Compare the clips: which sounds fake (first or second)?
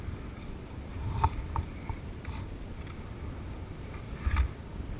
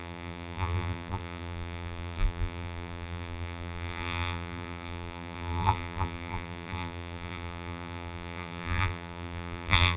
second